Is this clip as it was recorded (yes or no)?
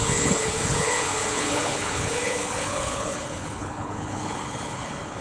no